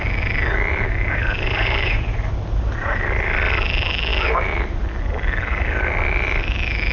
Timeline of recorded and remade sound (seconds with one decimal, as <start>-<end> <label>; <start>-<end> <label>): 0.0-0.7 recorded; 0.7-2.3 remade; 2.3-6.9 recorded